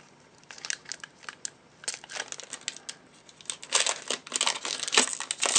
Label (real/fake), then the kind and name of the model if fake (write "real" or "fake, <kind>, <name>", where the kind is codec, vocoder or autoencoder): real